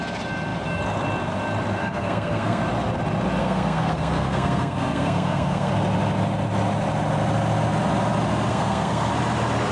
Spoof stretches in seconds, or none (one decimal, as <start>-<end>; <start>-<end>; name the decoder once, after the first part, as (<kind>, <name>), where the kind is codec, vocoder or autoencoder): 1.8-2.6 (codec, SNAC); 3.4-5.7; 8.5-9.1